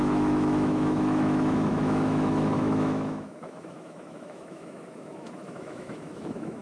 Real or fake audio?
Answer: fake